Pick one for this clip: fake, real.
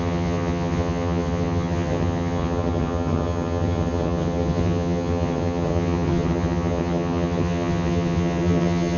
fake